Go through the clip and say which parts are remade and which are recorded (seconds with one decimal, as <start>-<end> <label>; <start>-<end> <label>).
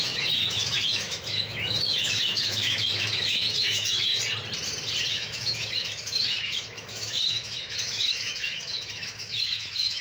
0.0-4.1 remade; 4.1-5.1 recorded; 5.1-10.0 remade